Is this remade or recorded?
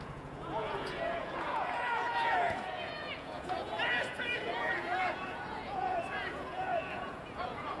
remade